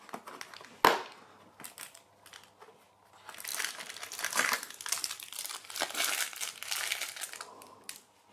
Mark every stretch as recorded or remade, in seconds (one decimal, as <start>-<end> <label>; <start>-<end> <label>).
0.0-3.5 recorded; 3.5-5.1 remade; 5.1-8.3 recorded

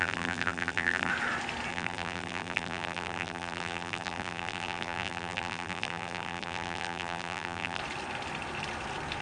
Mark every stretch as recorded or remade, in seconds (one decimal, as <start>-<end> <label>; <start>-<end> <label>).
0.0-1.1 remade; 1.1-1.7 recorded; 1.7-7.8 remade; 7.8-9.2 recorded